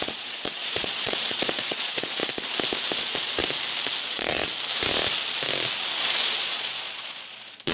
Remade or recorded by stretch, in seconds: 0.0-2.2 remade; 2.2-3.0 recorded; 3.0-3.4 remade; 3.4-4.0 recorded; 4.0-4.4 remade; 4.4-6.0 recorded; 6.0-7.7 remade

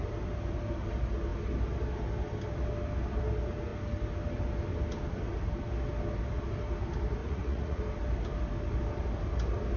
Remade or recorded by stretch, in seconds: 0.0-7.2 recorded; 7.2-7.8 remade; 7.8-9.8 recorded